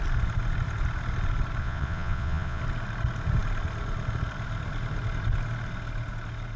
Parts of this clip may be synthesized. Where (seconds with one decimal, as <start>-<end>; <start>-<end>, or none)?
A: 1.6-2.6